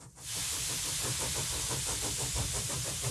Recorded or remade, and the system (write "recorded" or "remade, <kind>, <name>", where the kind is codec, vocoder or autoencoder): recorded